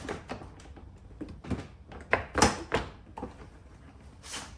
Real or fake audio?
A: real